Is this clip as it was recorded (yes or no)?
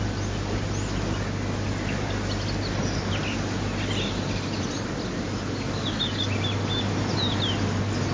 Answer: yes